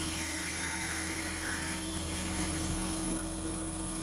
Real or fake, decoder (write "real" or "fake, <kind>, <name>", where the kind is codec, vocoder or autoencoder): fake, codec, SNAC